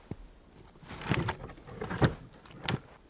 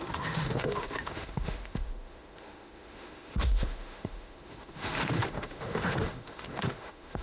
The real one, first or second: first